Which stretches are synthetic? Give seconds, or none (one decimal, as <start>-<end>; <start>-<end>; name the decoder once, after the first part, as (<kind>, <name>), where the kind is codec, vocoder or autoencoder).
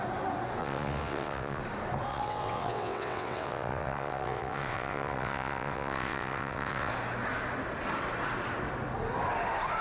0.6-1.6 (vocoder, WaveNeXt); 2.1-6.9